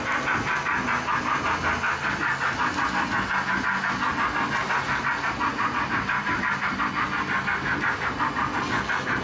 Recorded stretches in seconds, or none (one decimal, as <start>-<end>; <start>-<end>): 0.0-5.5; 6.9-9.2